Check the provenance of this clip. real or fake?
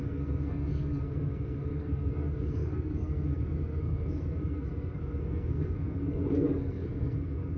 fake